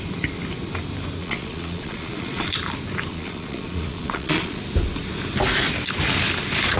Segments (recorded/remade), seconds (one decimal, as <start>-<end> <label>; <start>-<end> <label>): 0.0-1.2 recorded; 1.2-2.5 remade; 2.5-3.1 recorded; 3.1-4.6 remade; 4.6-6.8 recorded